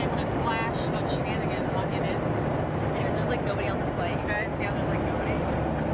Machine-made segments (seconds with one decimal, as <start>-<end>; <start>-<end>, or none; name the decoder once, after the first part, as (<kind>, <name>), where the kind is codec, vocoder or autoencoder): none